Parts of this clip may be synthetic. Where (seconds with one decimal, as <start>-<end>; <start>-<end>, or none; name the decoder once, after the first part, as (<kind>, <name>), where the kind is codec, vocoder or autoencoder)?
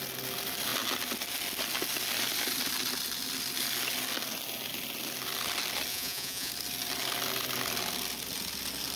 5.9-6.5 (vocoder, Vocos)